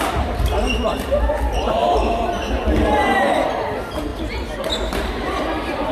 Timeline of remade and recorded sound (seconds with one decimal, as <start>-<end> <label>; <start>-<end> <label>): 0.0-1.8 recorded; 1.8-2.3 remade; 2.3-5.9 recorded